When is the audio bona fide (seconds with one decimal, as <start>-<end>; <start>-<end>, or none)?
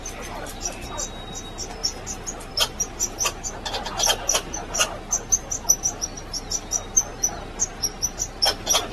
0.0-8.9